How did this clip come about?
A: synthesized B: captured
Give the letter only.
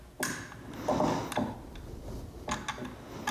B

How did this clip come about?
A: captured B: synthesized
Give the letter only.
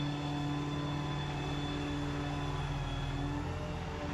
A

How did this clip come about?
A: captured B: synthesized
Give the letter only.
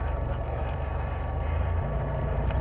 B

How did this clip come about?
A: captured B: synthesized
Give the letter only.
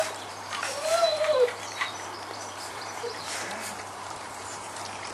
B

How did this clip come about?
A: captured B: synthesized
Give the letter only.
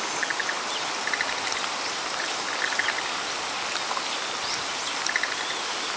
A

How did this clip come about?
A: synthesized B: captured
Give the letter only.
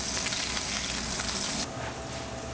B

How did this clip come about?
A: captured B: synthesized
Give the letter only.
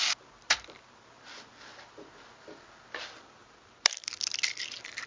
B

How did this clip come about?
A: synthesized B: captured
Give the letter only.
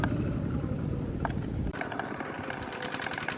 A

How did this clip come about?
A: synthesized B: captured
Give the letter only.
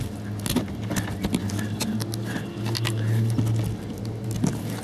B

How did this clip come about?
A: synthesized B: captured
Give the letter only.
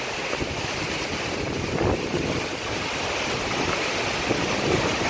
B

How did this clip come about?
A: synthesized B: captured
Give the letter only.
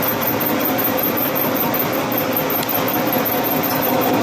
B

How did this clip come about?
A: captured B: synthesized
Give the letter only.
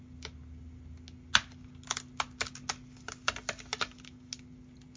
A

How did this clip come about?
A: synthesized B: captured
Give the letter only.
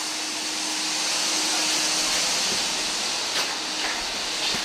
B